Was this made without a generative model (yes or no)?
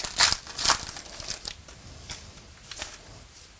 yes